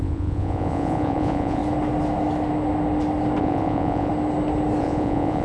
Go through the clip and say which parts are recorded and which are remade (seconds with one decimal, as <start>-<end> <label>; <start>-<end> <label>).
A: 0.0-1.6 remade; 1.6-3.4 recorded; 3.4-4.1 remade; 4.1-4.8 recorded; 4.8-5.4 remade